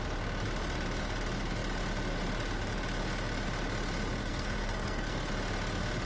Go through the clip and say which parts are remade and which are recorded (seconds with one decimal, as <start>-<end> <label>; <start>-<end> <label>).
0.0-4.2 recorded; 4.2-5.3 remade; 5.3-6.1 recorded